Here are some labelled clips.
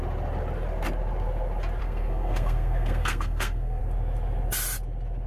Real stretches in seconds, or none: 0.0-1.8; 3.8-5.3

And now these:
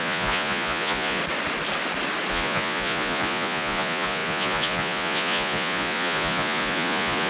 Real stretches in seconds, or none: 1.2-2.3

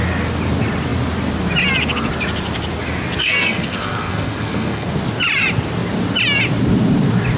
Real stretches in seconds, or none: 0.0-3.2; 4.9-7.4